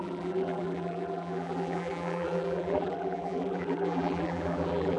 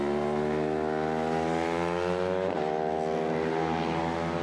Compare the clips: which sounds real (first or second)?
second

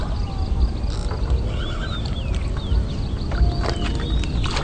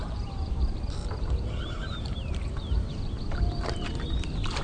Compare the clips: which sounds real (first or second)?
first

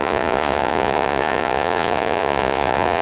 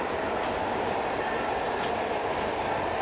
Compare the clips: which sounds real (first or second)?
second